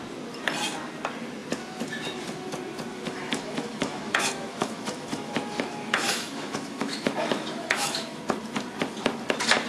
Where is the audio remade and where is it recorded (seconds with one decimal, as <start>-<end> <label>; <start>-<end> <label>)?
0.0-2.9 recorded; 2.9-8.2 remade; 8.2-9.7 recorded